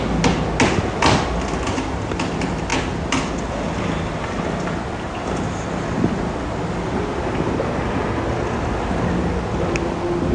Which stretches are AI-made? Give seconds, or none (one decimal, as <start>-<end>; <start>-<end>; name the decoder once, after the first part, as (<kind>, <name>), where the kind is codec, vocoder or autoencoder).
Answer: none